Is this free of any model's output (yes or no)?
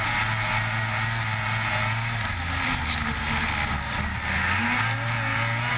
yes